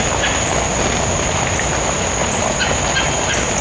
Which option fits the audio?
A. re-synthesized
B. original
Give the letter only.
B